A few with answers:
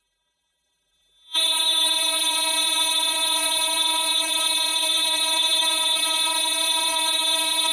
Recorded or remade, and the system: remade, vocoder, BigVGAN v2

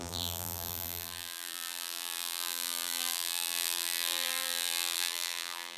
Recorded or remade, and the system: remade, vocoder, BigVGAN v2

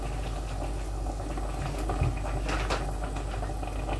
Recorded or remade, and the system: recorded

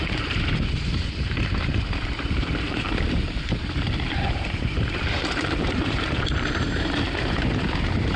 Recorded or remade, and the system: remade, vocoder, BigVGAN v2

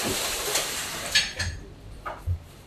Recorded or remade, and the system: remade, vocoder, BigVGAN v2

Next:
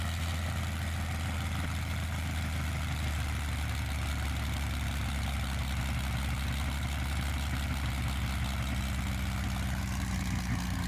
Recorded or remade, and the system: recorded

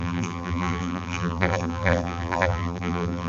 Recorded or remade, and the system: remade, vocoder, BigVGAN v2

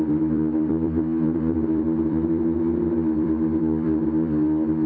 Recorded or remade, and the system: remade, vocoder, BigVGAN v2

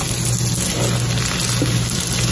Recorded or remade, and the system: recorded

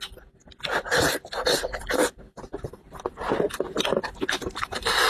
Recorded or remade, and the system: recorded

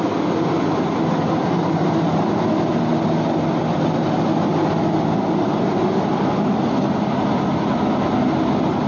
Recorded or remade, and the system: recorded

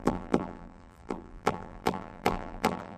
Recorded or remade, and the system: remade, vocoder, BigVGAN v2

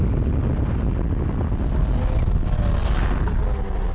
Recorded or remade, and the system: recorded